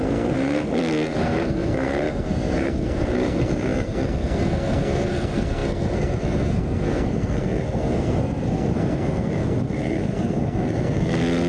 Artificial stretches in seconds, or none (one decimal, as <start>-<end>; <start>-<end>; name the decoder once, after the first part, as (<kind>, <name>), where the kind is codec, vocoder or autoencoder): 0.0-11.5 (codec, SNAC)

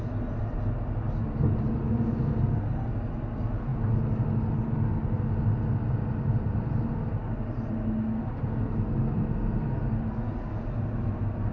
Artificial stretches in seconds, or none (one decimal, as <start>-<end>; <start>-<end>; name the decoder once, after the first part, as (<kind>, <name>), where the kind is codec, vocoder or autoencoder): none

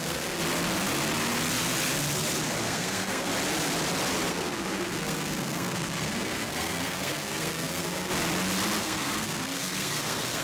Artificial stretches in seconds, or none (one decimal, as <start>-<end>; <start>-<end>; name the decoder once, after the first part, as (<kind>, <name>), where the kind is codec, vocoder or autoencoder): 0.0-0.4 (codec, SNAC); 2.6-3.3; 4.3-8.1; 8.8-10.4

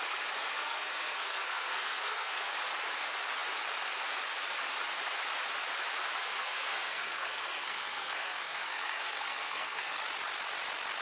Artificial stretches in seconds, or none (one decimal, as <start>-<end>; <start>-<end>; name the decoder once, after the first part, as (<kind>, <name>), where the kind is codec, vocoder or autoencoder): 0.5-2.5 (codec, SNAC); 6.2-10.0

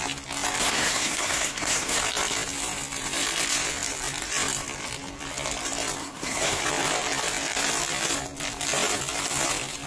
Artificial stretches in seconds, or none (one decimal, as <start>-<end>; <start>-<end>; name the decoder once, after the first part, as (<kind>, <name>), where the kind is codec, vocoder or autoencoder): 0.6-2.0 (codec, SNAC); 6.0-6.6

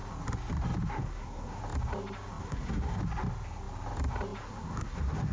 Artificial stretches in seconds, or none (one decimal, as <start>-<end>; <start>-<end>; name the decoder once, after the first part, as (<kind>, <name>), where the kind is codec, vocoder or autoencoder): 0.9-1.6 (codec, SNAC); 2.4-3.0; 4.4-5.3